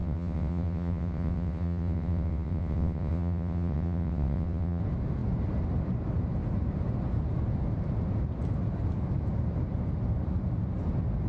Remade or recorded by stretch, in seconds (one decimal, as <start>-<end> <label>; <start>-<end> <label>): 0.0-4.8 remade; 4.8-11.3 recorded